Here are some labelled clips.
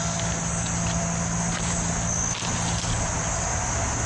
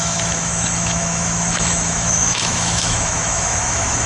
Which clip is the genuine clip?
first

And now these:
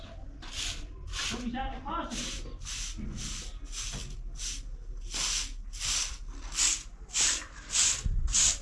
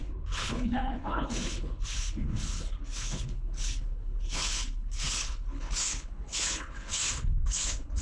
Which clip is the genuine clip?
first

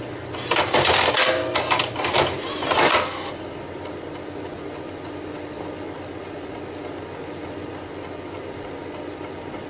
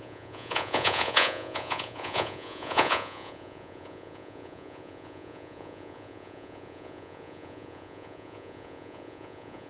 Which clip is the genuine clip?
first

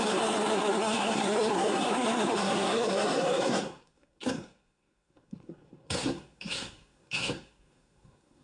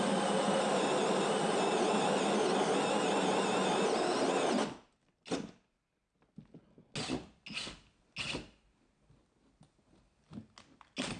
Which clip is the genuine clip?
second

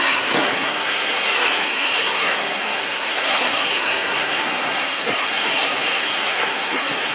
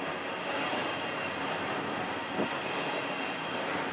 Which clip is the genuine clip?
second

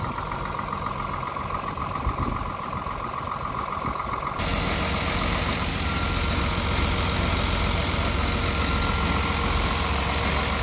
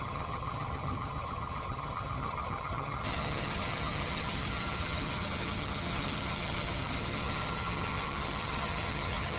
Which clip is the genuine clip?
first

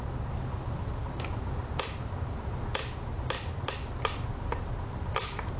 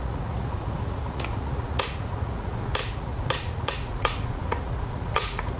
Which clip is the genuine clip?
first